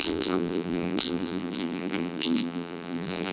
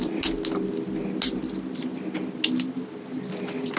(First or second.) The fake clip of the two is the first